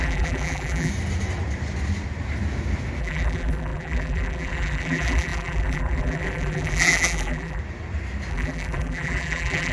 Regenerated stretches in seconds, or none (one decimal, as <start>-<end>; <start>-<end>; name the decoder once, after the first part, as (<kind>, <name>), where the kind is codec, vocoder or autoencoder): 0.0-0.9 (vocoder, BigVGAN v2); 3.0-7.6; 8.3-9.7